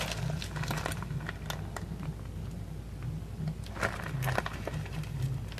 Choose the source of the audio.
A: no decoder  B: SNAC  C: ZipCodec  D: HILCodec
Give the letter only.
A